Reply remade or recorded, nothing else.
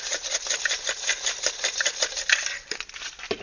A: recorded